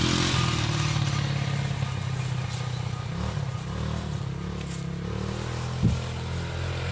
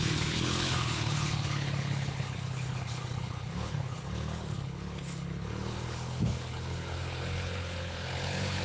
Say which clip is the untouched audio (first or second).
first